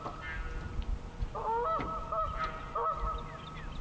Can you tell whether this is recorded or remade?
recorded